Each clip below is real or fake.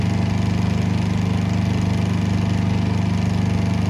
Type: real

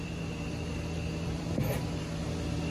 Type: fake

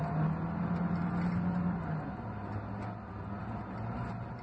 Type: real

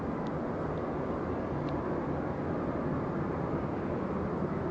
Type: fake